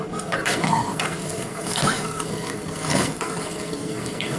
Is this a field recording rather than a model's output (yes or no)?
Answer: no